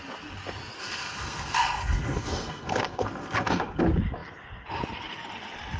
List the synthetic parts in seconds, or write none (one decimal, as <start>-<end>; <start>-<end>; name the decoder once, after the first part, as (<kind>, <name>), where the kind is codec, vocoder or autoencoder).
0.8-3.8 (codec, SNAC)